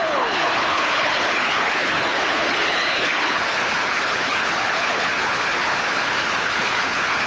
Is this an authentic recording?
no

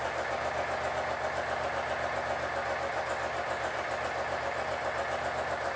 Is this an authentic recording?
yes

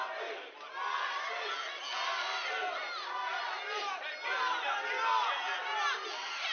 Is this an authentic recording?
yes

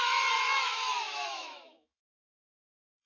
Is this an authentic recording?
no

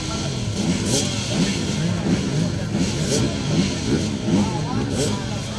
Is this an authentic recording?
yes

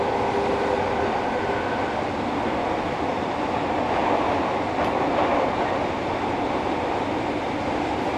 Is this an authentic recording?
yes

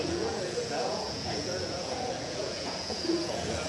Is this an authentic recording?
no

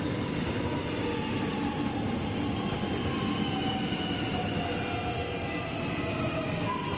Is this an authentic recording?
yes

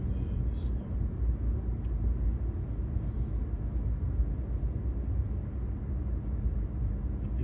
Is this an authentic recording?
yes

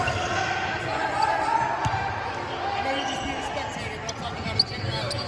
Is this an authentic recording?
yes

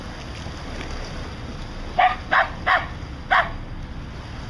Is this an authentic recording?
yes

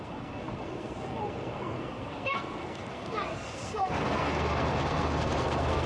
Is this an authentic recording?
no